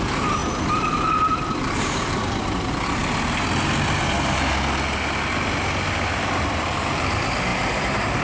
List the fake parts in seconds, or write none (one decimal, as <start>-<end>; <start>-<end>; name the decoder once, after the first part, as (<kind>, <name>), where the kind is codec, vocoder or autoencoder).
0.0-0.4 (vocoder, BigVGAN v2); 1.2-3.0; 5.9-8.2